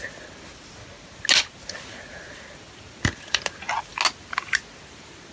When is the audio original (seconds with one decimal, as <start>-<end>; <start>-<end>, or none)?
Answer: 0.0-5.3